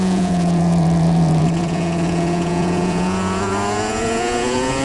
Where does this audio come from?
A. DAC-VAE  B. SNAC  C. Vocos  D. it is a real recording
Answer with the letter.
C